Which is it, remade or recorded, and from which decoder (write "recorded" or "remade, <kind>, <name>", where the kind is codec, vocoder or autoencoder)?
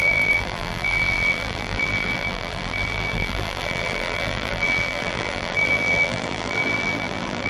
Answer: remade, vocoder, BigVGAN v2